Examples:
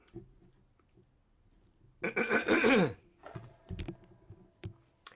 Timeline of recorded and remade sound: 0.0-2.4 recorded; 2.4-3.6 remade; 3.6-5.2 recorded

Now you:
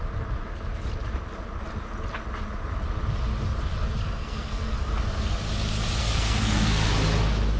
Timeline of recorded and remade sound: 0.0-4.0 recorded; 4.0-4.8 remade; 4.8-6.0 recorded; 6.0-6.9 remade; 6.9-7.6 recorded

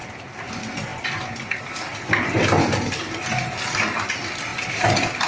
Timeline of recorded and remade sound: 0.0-5.3 recorded

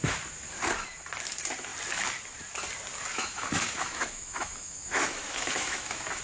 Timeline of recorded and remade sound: 0.0-3.1 recorded; 3.1-6.2 remade

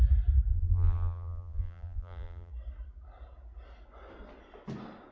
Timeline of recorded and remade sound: 0.0-0.5 recorded; 0.5-2.5 remade; 2.5-5.1 recorded

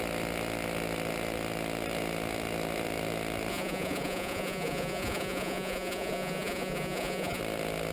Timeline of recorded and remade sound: 0.0-3.5 recorded; 3.5-7.4 remade; 7.4-7.9 recorded

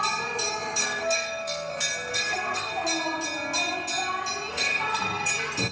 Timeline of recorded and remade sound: 0.0-0.8 recorded; 0.8-1.7 remade; 1.7-2.1 recorded; 2.1-2.7 remade; 2.7-4.5 recorded; 4.5-5.3 remade; 5.3-5.7 recorded